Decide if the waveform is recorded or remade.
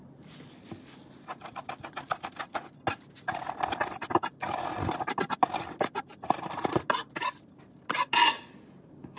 recorded